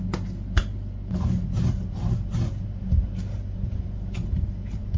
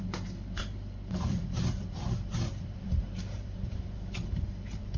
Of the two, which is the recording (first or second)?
first